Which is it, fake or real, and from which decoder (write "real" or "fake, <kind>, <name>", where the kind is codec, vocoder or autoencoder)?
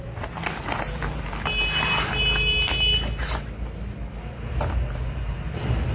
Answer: real